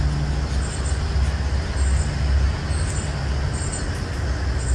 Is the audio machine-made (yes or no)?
no